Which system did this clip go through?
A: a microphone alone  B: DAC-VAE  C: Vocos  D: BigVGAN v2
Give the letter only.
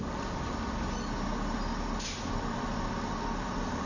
A